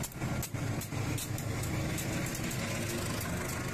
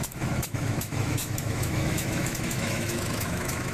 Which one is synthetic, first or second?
second